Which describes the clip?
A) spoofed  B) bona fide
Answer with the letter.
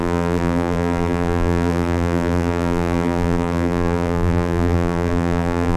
A